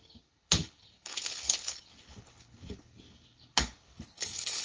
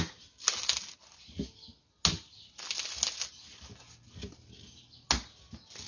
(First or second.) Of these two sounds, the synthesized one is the first